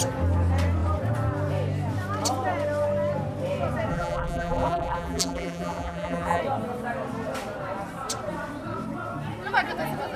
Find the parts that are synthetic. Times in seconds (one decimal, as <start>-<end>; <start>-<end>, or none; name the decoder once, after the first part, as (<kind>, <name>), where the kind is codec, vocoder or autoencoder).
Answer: 3.9-6.4 (vocoder, BigVGAN v2)